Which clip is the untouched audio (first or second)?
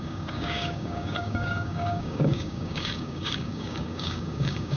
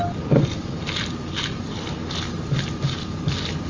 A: second